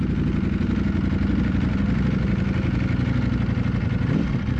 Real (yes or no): yes